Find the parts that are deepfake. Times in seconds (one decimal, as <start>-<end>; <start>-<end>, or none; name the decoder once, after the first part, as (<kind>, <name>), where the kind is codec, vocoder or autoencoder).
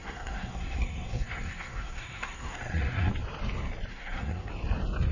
0.0-3.1 (codec, SNAC); 3.9-4.5